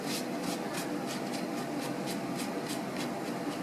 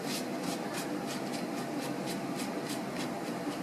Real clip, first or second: first